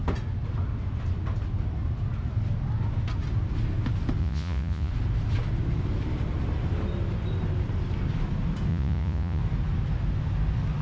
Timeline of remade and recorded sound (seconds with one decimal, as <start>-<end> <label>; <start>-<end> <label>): 0.0-4.2 recorded; 4.2-4.9 remade; 4.9-8.7 recorded; 8.7-9.4 remade; 9.4-10.8 recorded